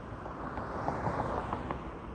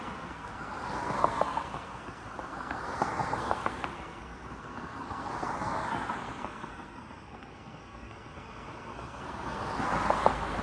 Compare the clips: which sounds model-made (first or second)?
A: second